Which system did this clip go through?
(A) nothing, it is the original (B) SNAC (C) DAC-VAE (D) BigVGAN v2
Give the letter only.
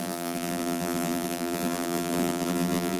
D